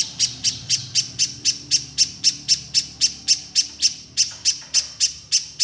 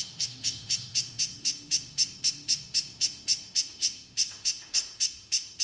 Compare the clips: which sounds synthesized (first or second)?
second